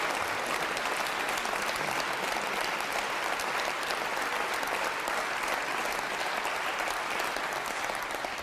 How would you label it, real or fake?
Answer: real